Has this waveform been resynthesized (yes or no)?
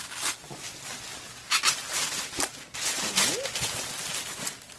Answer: no